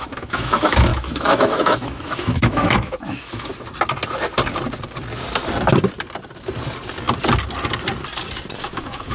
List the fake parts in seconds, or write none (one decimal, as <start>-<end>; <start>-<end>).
0.0-3.5; 8.6-9.1